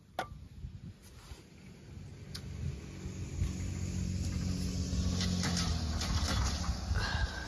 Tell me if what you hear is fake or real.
real